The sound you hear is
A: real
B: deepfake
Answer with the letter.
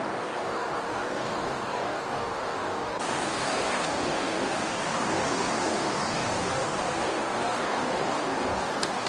B